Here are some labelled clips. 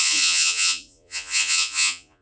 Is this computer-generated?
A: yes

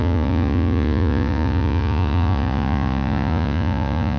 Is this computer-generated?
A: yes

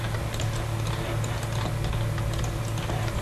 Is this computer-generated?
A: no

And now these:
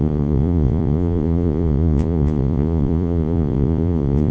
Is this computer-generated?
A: yes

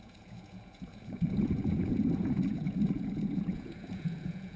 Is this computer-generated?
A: yes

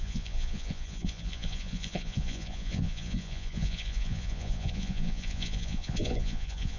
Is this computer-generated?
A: yes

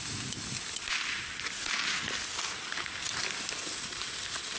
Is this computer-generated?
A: no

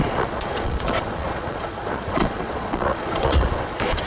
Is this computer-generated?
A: yes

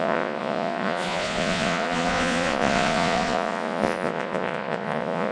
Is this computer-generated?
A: yes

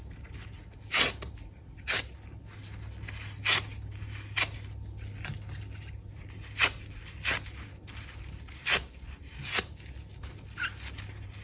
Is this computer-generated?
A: no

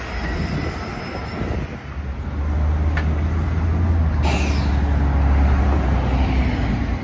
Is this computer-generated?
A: no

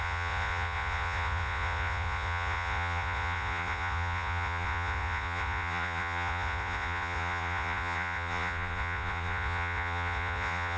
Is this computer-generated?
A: yes